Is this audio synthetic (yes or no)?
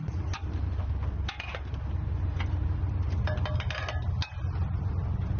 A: no